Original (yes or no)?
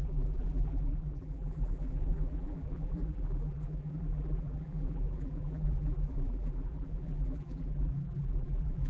no